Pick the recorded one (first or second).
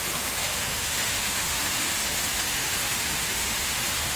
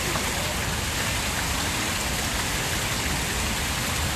second